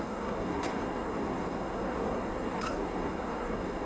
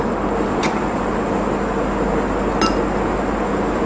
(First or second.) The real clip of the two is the second